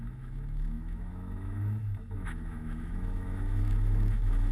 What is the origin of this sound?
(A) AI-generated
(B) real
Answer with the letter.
A